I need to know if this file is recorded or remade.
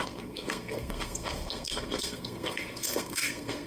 remade